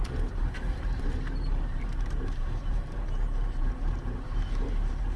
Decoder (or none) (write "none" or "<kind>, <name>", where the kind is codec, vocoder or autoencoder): vocoder, BigVGAN v2